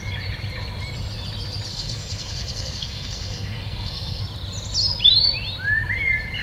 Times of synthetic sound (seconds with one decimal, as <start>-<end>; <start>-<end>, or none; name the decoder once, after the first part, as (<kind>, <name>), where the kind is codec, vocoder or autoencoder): 1.7-4.2 (codec, SNAC)